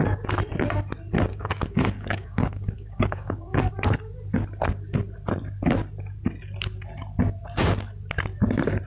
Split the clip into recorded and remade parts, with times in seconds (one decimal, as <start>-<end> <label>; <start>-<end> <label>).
0.0-1.3 recorded; 1.3-3.7 remade; 3.7-8.9 recorded